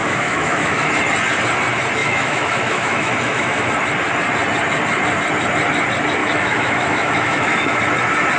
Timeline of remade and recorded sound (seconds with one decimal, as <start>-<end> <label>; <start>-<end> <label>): 0.0-0.9 remade; 0.9-2.0 recorded; 2.0-3.7 remade; 3.7-6.2 recorded; 6.2-7.8 remade; 7.8-8.4 recorded